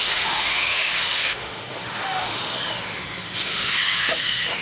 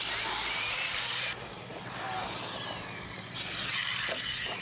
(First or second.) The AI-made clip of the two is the first